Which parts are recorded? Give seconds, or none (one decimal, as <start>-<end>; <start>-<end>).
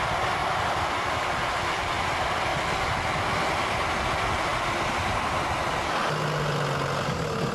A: 0.0-0.4; 1.3-4.5; 5.2-7.5